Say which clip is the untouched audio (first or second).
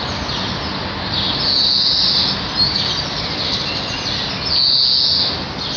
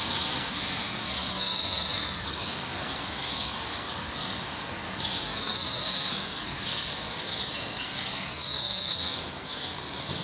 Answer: first